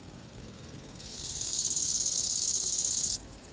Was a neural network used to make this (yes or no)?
yes